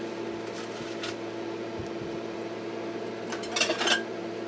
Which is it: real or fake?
real